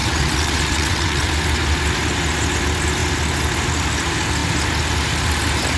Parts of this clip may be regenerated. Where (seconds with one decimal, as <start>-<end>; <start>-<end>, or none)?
0.0-1.3